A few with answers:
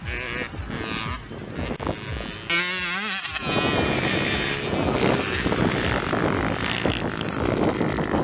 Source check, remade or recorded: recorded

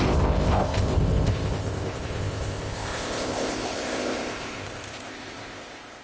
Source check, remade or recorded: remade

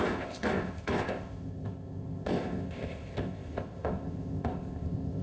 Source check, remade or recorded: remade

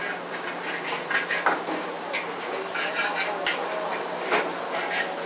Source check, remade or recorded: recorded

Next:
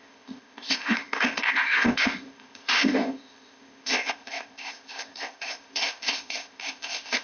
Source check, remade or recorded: remade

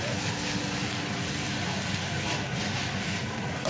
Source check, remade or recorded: recorded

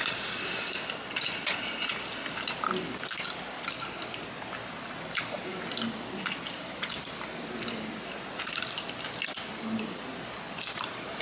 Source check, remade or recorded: recorded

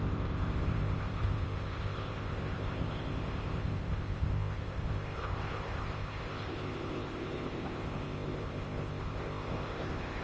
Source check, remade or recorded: remade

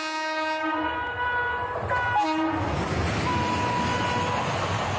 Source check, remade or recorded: recorded